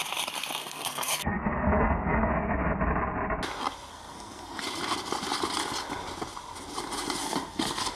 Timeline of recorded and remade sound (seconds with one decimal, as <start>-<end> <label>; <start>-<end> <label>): 0.0-0.6 recorded; 0.6-2.3 remade; 2.3-3.9 recorded; 3.9-4.6 remade; 4.6-7.2 recorded; 7.2-8.0 remade